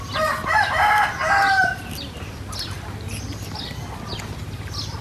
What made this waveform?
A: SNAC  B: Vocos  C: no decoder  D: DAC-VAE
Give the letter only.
C